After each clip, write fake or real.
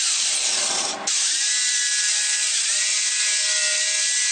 real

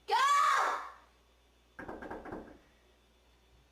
real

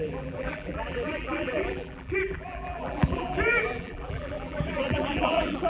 fake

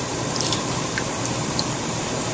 fake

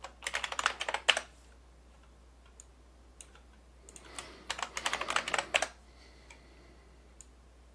real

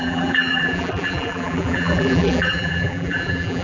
fake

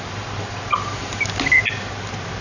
real